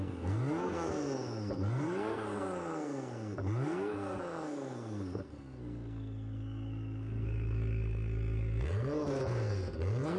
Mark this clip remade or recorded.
remade